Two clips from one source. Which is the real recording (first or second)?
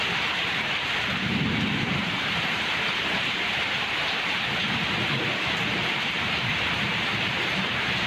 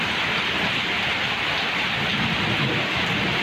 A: second